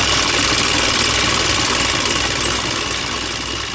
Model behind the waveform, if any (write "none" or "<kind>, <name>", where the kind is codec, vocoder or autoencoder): none